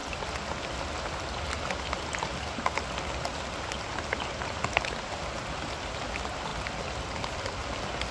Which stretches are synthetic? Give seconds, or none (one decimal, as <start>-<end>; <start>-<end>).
none